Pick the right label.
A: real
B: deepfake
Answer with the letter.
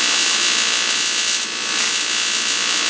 A